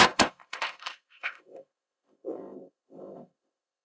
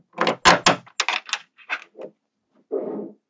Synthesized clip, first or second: first